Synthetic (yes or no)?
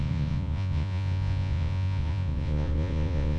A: yes